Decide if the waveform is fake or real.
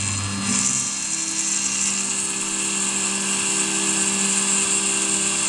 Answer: real